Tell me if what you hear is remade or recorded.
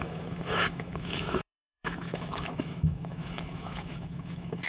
remade